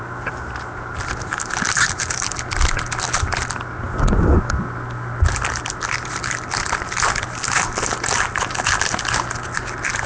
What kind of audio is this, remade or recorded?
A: recorded